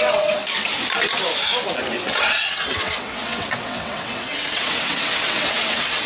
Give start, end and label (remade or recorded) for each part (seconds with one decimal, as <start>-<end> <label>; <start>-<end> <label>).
0.0-0.4 remade; 0.4-1.9 recorded; 1.9-6.1 remade